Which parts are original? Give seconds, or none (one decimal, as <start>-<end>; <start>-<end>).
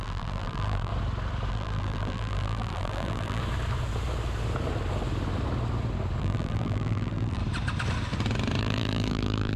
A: 0.9-1.5; 3.4-6.2; 7.4-8.6